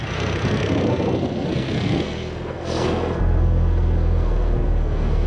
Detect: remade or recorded remade